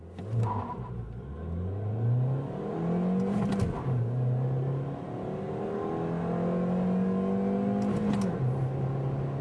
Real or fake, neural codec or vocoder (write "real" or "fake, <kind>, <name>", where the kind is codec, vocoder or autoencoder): real